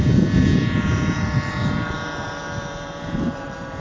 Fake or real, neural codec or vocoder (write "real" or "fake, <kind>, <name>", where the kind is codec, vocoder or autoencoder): fake, vocoder, BigVGAN v2